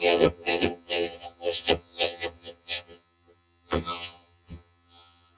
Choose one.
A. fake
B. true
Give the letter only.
A